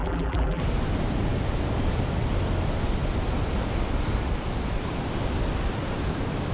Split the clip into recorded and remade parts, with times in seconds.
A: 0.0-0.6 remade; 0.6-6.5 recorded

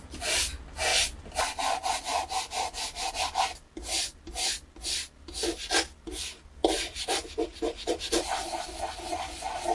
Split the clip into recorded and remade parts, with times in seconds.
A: 0.0-0.9 recorded; 0.9-3.1 remade; 3.1-6.6 recorded; 6.6-8.0 remade; 8.0-9.7 recorded

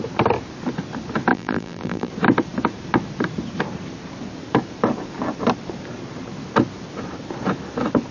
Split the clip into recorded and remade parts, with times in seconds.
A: 0.0-1.3 recorded; 1.3-2.1 remade; 2.1-8.1 recorded

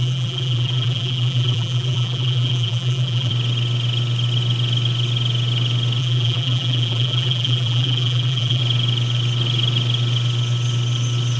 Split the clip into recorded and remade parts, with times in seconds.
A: 0.0-3.3 remade; 3.3-6.0 recorded; 6.0-8.6 remade; 8.6-11.4 recorded

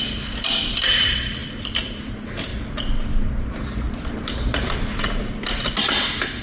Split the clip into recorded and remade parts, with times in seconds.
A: 0.0-2.5 remade; 2.5-3.6 recorded; 3.6-4.5 remade; 4.5-6.0 recorded; 6.0-6.4 remade

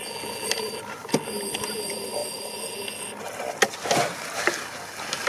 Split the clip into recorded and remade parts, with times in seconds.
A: 0.0-5.3 recorded

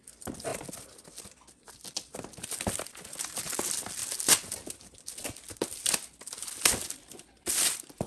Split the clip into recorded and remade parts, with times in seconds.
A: 0.0-0.5 remade; 0.5-3.1 recorded; 3.1-4.0 remade; 4.0-6.9 recorded; 6.9-8.1 remade